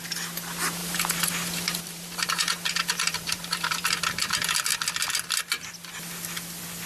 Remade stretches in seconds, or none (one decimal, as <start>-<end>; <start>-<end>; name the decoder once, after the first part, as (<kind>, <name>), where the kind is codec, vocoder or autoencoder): 0.8-4.0 (vocoder, BigVGAN v2)